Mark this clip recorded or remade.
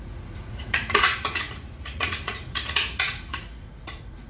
remade